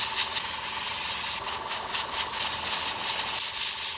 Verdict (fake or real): real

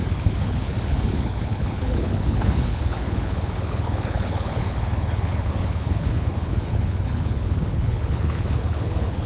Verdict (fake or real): fake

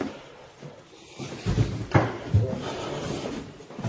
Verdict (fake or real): fake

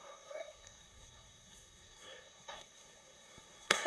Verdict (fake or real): fake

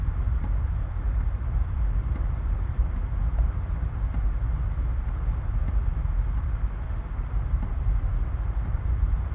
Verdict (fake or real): real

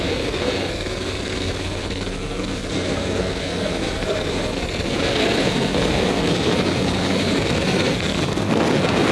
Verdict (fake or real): fake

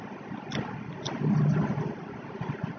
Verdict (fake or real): real